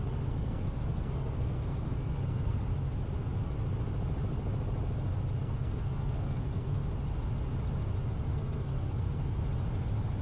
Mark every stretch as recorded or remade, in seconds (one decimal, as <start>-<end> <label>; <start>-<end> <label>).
0.0-2.7 remade; 2.7-5.4 recorded; 5.4-6.8 remade; 6.8-8.3 recorded; 8.3-9.4 remade; 9.4-10.2 recorded